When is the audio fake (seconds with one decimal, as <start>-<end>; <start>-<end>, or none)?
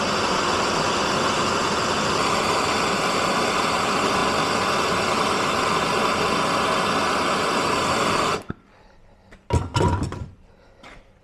none